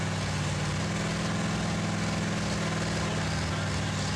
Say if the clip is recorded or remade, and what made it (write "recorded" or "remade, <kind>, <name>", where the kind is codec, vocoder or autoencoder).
recorded